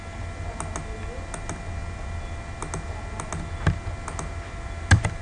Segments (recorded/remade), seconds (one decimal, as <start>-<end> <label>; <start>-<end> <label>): 0.0-5.2 recorded